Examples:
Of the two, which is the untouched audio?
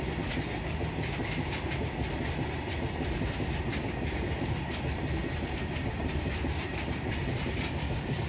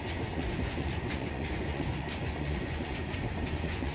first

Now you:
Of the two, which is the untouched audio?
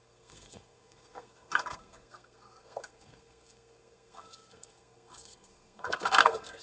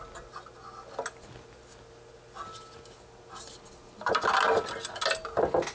second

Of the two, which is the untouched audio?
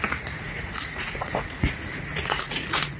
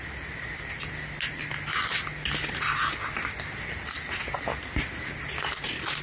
second